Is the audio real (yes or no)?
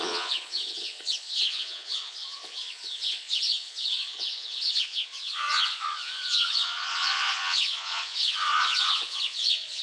no